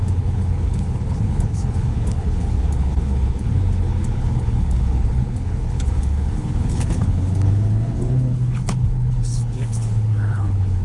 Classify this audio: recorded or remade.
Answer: remade